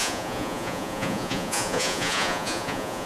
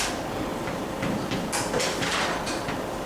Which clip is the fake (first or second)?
first